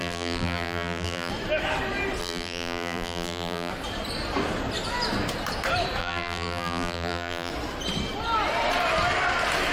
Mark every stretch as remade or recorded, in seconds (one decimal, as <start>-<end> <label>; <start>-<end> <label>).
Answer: 0.0-1.3 remade; 1.3-2.2 recorded; 2.2-3.7 remade; 3.7-6.0 recorded; 6.0-7.5 remade; 7.5-9.7 recorded